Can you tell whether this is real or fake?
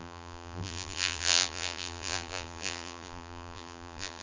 fake